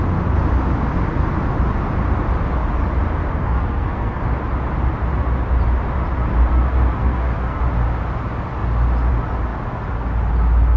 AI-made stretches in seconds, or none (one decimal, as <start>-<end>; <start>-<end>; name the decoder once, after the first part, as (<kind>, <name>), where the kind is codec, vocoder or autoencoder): 3.3-4.2 (codec, SNAC); 6.3-7.6